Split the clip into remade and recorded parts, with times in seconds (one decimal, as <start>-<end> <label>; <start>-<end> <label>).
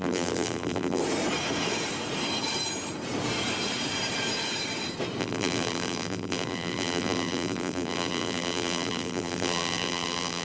0.0-1.0 remade; 1.0-5.2 recorded; 5.2-10.4 remade